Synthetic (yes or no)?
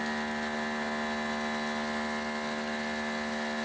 no